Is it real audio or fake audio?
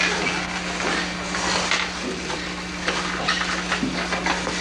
real